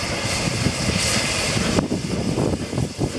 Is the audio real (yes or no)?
yes